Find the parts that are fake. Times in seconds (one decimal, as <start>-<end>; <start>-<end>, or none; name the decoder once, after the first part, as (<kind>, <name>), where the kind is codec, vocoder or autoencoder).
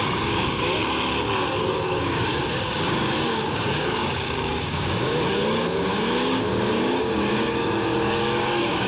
0.0-0.8 (codec, DAC); 1.6-8.9